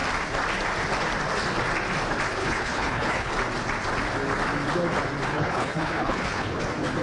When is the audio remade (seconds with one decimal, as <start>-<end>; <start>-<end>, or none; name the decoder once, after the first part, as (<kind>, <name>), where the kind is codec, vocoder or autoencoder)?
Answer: 2.4-3.3 (codec, HILCodec); 5.3-6.6